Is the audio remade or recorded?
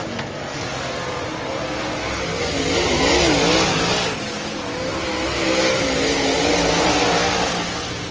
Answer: recorded